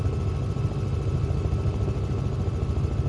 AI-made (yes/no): no